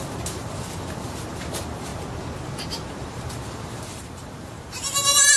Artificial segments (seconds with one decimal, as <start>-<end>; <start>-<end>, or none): 0.0-1.9; 3.3-5.4